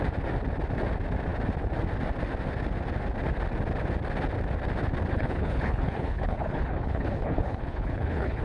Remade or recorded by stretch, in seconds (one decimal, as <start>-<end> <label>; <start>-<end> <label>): 0.0-5.1 recorded; 5.1-8.4 remade